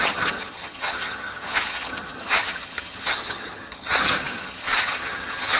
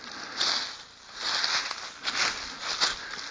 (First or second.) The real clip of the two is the second